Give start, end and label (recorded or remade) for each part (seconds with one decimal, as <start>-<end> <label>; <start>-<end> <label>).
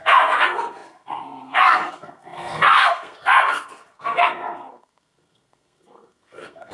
0.0-6.7 remade